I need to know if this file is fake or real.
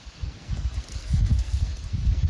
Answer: fake